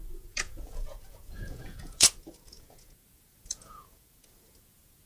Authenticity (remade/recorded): remade